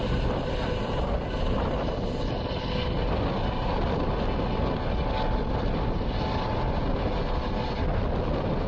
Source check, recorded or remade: recorded